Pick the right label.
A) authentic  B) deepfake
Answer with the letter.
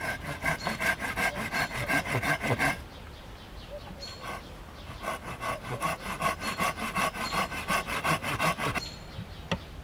A